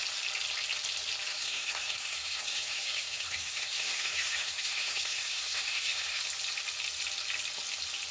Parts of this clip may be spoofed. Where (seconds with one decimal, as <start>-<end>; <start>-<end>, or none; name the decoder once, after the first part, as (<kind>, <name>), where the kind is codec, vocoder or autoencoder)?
1.3-6.2 (codec, SNAC)